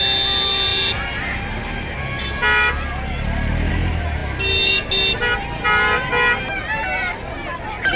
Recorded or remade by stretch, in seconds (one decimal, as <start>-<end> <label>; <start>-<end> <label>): 0.0-8.0 recorded